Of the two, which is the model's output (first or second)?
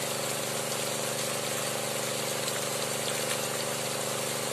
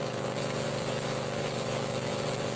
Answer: second